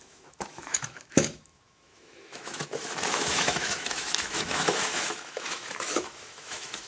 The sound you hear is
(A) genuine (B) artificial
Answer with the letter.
B